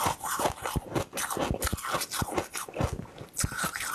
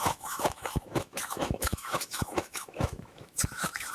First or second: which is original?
first